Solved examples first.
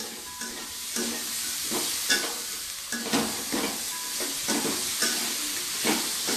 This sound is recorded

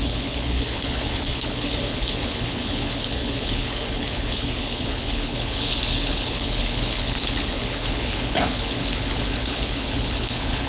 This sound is remade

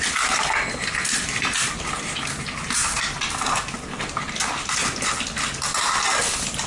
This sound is recorded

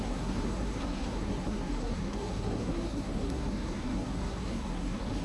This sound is remade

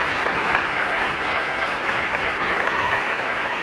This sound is remade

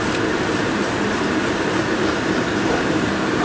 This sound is remade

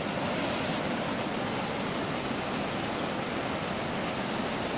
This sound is recorded